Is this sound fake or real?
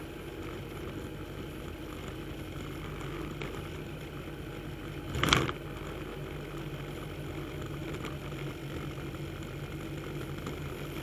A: real